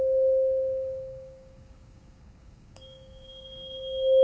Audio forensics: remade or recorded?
remade